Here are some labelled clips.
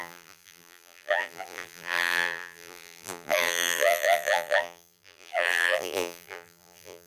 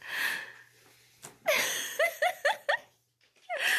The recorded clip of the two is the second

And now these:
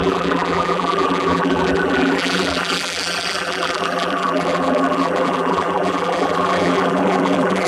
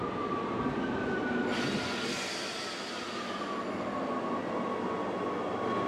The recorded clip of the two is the second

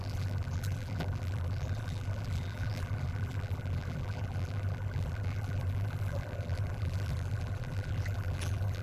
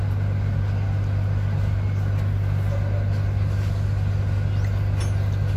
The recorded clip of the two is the second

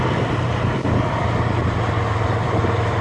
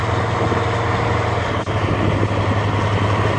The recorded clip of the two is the second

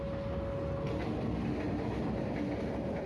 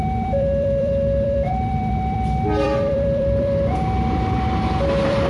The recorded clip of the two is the first